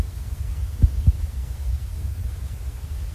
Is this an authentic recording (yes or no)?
no